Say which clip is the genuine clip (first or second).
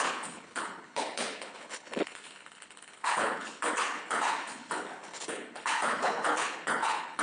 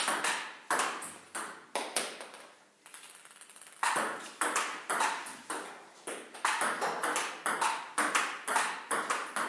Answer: second